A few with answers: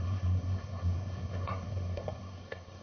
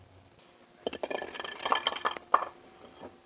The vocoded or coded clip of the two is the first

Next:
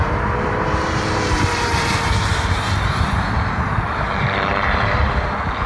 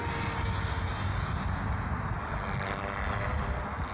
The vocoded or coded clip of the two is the first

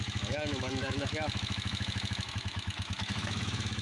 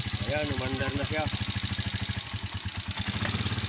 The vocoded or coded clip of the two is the first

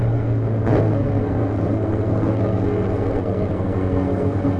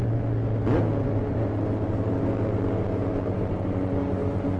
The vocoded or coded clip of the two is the first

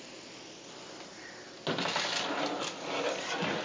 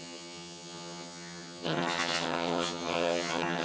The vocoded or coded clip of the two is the second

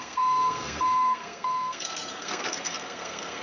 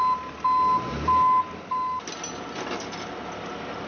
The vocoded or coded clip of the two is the first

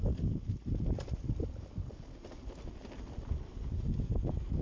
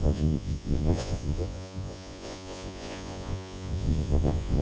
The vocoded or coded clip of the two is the second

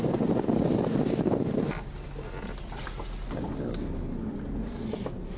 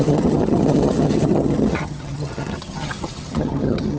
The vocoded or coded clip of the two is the second